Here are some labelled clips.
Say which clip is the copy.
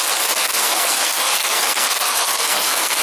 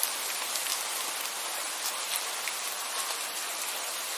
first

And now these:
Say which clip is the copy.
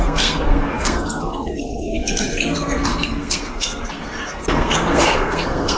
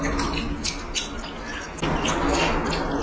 first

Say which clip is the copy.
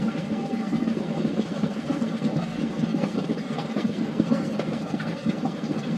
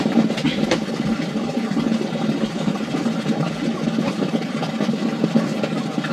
first